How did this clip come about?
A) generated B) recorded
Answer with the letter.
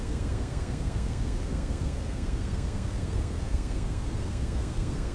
A